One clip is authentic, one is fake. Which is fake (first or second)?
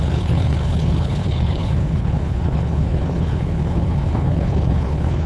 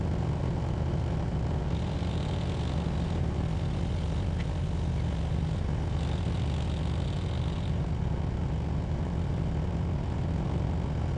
first